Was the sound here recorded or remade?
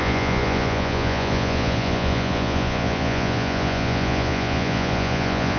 remade